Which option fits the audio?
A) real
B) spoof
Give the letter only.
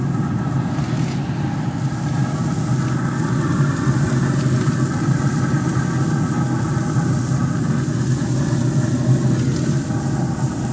A